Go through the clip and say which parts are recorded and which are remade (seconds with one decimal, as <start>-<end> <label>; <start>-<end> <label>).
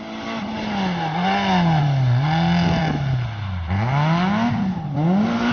0.0-5.5 recorded